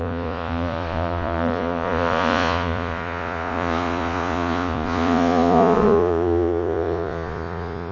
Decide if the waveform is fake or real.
fake